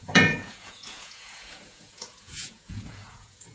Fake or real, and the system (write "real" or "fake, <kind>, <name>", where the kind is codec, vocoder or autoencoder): fake, vocoder, Vocos